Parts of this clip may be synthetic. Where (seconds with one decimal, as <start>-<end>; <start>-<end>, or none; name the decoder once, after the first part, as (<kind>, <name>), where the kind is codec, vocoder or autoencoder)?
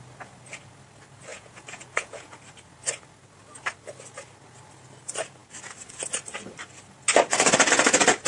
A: 1.3-2.3 (vocoder, Vocos)